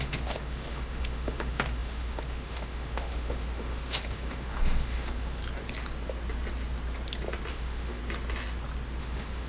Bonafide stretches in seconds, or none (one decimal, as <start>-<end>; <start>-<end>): 5.4-7.5; 8.0-9.0

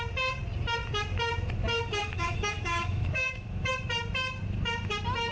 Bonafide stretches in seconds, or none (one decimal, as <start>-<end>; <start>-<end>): 0.0-2.0; 3.7-5.3

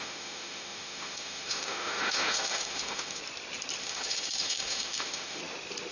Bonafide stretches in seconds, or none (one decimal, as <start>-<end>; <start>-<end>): 3.2-3.8; 5.4-5.9

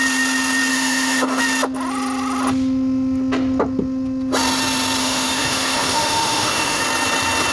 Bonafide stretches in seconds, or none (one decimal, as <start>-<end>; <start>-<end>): 0.0-0.7; 1.4-5.0; 6.8-7.5